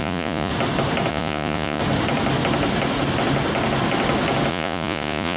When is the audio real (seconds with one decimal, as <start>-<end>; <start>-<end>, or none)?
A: 0.5-1.1; 1.8-4.5